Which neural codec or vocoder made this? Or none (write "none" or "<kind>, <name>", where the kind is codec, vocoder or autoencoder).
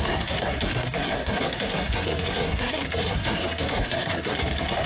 codec, SNAC